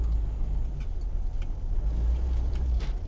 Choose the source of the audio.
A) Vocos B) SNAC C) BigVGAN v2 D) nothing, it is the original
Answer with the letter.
D